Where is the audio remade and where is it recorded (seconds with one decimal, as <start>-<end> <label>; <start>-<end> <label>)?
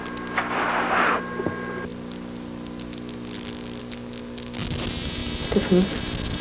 0.0-6.4 recorded